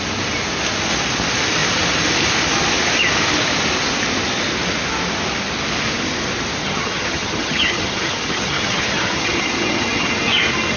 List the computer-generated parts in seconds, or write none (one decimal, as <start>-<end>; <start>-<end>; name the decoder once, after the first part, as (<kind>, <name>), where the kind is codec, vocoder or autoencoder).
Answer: 6.6-10.1 (vocoder, HiFi-GAN)